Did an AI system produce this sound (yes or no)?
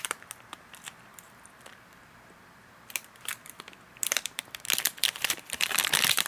yes